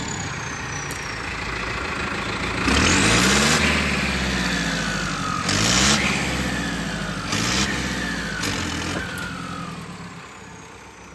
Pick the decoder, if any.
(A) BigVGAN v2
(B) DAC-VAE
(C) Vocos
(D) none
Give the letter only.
D